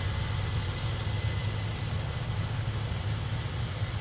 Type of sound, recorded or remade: recorded